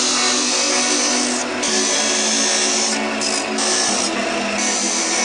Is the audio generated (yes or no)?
no